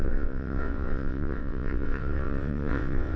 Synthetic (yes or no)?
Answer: yes